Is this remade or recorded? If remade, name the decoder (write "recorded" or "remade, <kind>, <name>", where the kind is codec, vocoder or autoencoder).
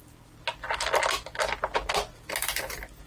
recorded